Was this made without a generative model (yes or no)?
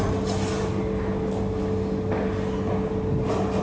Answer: yes